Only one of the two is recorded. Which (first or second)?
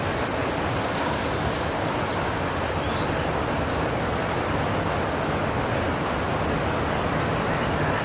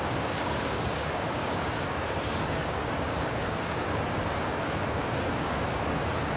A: first